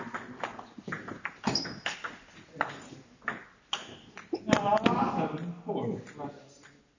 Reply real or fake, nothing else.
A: real